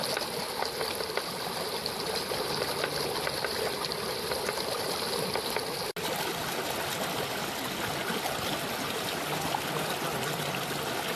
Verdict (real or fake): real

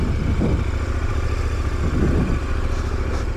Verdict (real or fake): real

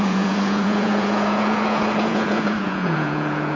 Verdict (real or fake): fake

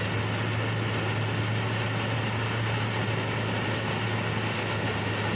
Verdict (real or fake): real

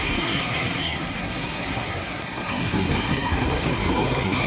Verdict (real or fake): fake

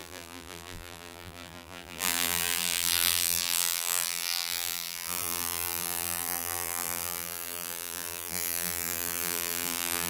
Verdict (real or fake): fake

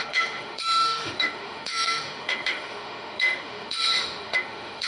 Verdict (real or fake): fake